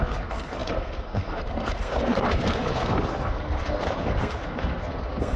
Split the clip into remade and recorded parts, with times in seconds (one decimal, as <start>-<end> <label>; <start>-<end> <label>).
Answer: 0.0-5.4 remade